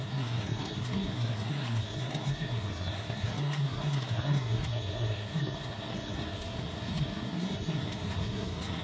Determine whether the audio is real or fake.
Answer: fake